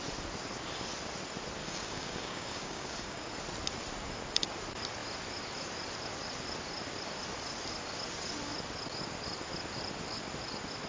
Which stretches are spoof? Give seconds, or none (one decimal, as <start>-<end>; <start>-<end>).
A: 1.6-3.3